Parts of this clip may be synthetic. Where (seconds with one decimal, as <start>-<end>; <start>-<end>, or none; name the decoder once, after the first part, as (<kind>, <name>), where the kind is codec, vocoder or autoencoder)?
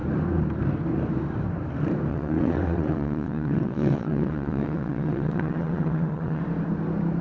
2.1-6.4 (vocoder, WaveNeXt)